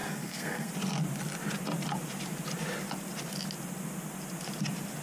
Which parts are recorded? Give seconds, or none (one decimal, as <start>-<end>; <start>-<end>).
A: 0.7-5.0